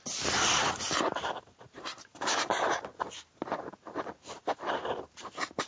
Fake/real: fake